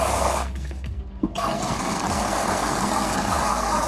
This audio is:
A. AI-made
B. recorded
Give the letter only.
A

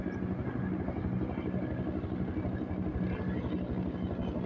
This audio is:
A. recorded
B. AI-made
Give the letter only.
A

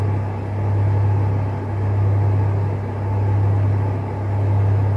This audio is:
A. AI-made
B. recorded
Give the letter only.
B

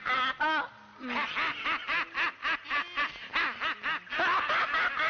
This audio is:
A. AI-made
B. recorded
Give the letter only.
B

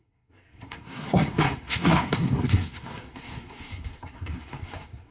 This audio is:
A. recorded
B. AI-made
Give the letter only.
B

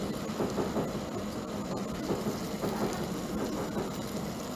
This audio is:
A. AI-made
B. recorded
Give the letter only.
B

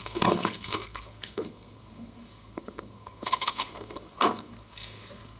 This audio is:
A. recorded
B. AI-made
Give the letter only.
B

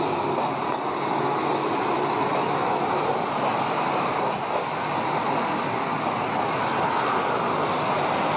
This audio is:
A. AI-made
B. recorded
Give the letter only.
B